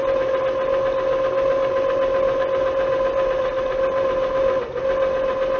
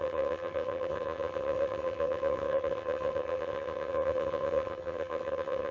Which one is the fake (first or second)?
second